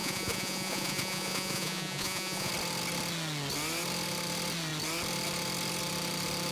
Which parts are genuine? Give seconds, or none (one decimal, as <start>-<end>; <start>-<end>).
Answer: 2.5-6.5